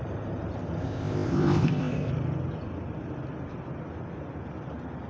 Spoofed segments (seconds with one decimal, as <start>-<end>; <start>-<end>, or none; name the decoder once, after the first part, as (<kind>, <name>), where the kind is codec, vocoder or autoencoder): 0.8-2.1 (codec, ZipCodec)